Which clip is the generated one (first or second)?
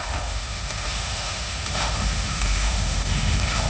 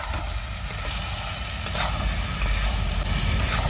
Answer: first